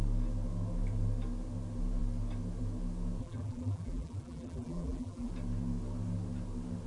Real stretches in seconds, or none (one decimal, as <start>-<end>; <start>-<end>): 0.0-3.2; 5.3-6.9